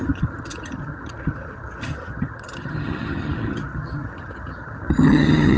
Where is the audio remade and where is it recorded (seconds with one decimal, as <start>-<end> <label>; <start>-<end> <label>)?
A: 0.0-5.6 remade